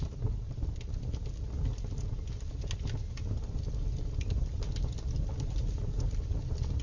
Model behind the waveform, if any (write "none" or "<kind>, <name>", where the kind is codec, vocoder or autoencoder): none